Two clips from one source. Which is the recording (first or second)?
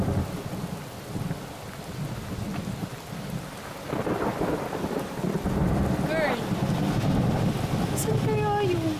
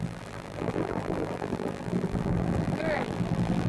first